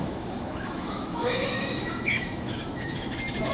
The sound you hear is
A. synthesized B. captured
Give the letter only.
A